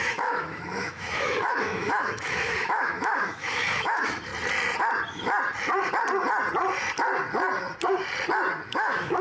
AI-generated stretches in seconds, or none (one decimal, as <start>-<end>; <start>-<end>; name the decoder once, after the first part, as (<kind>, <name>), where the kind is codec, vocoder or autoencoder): 0.0-4.3 (autoencoder, DAC-VAE); 8.7-9.2